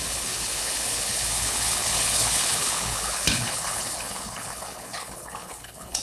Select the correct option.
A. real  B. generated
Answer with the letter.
B